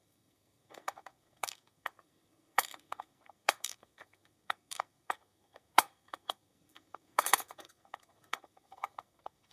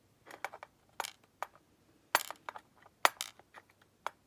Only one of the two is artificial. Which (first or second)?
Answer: first